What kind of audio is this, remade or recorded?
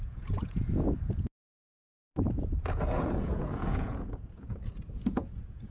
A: remade